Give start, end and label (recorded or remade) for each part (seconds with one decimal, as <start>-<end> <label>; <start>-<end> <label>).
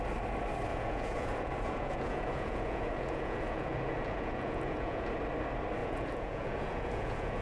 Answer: 0.0-0.7 recorded; 0.7-5.1 remade; 5.1-5.8 recorded; 5.8-7.4 remade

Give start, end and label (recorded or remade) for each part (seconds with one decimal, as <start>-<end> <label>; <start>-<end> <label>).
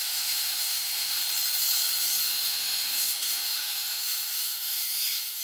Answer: 0.0-1.2 remade; 1.2-2.2 recorded; 2.2-5.4 remade